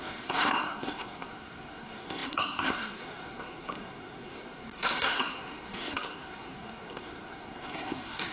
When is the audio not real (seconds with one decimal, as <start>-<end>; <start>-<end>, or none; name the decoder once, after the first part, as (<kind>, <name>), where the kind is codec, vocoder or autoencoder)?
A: 0.0-8.3 (codec, SNAC)